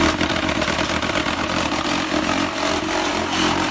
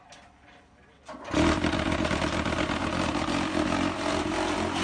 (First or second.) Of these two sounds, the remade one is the first